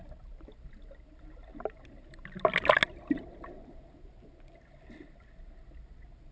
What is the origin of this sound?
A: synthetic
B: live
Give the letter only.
B